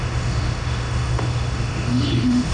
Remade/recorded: remade